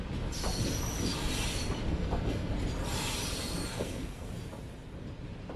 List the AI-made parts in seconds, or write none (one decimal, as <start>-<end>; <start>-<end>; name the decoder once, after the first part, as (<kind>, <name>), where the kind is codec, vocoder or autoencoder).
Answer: 1.9-2.5 (codec, SNAC); 3.7-4.3